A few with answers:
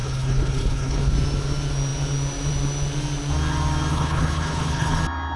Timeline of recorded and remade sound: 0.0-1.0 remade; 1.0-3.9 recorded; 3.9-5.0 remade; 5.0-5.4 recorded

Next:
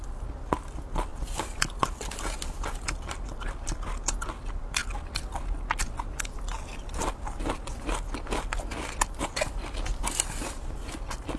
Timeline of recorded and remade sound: 0.0-11.4 recorded